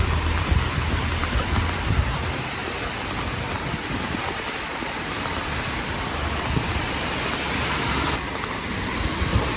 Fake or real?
fake